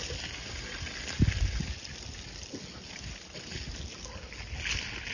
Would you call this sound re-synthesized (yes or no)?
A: no